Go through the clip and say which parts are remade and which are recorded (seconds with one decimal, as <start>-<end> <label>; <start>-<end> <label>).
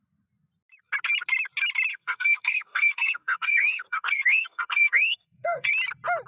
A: 0.0-1.9 recorded; 1.9-5.7 remade; 5.7-6.3 recorded